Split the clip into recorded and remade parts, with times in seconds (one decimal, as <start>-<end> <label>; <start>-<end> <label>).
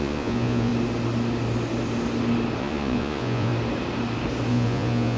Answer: 0.0-0.7 remade; 0.7-2.6 recorded; 2.6-3.5 remade; 3.5-4.5 recorded; 4.5-5.2 remade